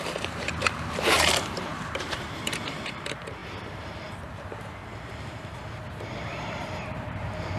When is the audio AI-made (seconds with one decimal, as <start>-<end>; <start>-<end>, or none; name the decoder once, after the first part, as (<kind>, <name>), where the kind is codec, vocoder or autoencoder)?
0.0-7.6 (vocoder, BigVGAN v2)